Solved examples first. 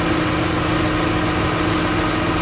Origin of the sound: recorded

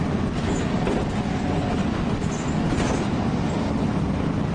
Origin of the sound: recorded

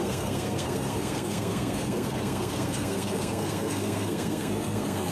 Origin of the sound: remade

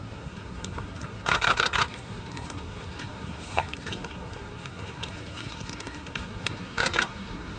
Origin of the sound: remade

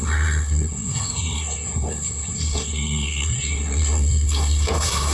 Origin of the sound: remade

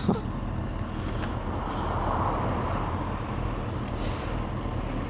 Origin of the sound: recorded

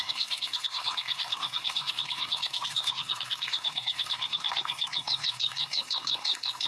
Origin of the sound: remade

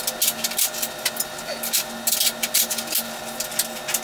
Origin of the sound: recorded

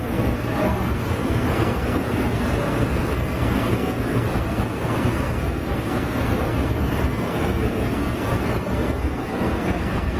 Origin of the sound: remade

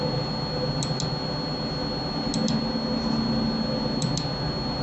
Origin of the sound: recorded